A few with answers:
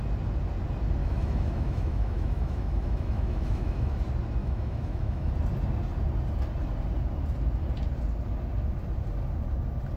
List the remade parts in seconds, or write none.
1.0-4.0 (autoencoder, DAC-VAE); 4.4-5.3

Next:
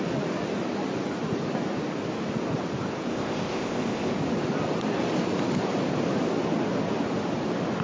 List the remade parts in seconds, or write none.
3.1-4.1 (codec, ZipCodec)